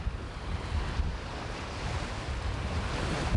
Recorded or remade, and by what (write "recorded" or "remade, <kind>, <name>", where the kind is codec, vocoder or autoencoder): recorded